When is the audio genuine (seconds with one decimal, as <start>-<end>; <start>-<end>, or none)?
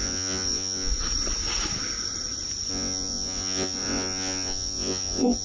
0.9-2.7